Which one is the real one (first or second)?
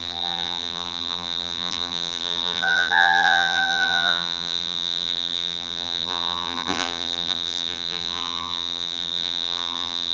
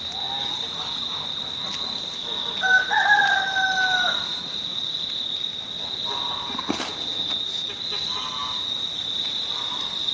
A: second